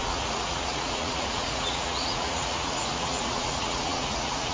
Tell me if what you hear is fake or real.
fake